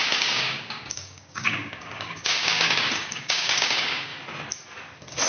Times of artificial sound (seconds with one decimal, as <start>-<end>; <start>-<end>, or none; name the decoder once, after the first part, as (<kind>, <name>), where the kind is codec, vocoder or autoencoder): 0.0-4.1 (codec, DAC)